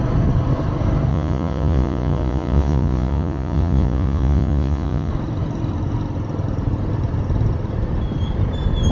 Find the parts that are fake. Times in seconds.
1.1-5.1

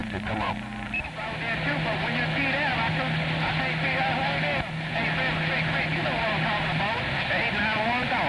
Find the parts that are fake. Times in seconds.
0.0-0.5

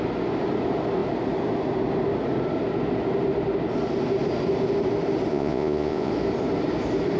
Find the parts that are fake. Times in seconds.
5.3-6.1

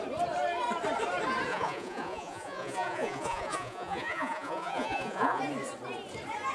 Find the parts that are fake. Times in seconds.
1.5-5.4